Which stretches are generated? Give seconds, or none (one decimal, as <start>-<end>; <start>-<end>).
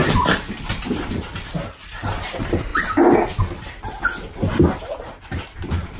0.0-2.7; 4.5-6.0